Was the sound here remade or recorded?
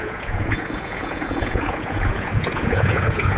remade